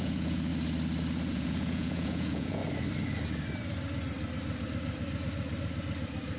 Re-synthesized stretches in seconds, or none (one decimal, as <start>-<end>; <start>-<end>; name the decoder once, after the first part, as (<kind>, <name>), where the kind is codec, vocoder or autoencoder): 0.0-0.5 (vocoder, Vocos); 1.3-2.6